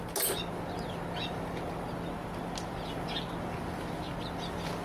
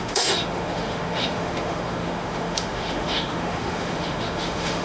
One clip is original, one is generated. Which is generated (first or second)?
second